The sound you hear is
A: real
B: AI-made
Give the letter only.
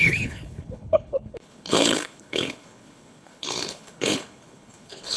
B